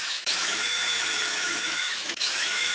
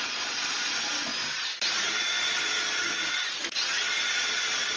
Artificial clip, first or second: first